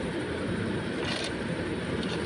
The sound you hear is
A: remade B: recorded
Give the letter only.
A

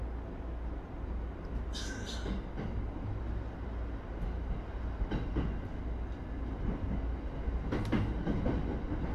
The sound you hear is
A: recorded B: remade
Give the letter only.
A